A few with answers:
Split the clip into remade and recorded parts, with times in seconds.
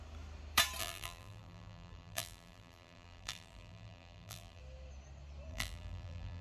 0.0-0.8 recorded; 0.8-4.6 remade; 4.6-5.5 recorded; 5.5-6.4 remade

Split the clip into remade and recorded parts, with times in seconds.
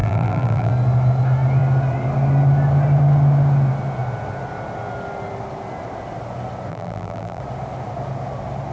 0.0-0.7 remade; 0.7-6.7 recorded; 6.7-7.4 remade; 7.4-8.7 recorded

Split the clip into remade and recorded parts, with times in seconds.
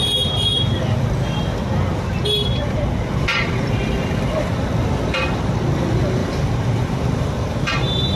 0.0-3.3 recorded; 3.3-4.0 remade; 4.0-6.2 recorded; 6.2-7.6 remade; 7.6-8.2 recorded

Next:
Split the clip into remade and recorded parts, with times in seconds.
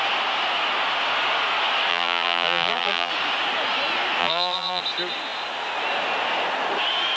0.0-1.9 recorded; 1.9-3.1 remade; 3.1-4.2 recorded; 4.2-4.8 remade; 4.8-7.2 recorded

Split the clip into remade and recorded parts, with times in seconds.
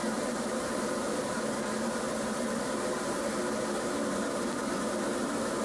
0.0-3.4 remade; 3.4-4.7 recorded; 4.7-5.6 remade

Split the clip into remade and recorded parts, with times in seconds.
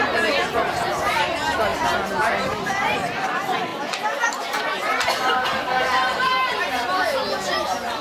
0.0-8.0 recorded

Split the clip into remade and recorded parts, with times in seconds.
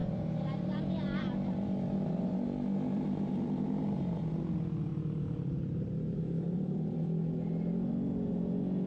0.0-4.2 remade; 4.2-4.9 recorded; 4.9-7.3 remade; 7.3-8.9 recorded